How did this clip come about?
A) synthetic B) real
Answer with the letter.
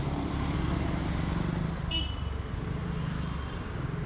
B